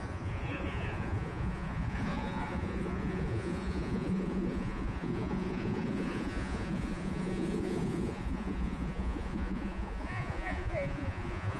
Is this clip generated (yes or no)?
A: yes